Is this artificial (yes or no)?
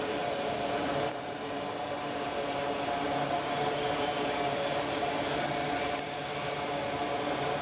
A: no